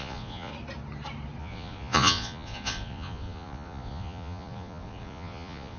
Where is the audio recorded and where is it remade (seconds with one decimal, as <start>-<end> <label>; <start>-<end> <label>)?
0.0-0.5 remade; 0.5-1.4 recorded; 1.4-5.8 remade